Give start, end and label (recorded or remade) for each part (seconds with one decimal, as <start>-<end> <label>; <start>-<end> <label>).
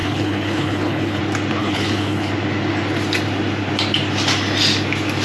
0.0-1.2 remade; 1.2-1.6 recorded; 1.6-2.3 remade; 2.3-5.2 recorded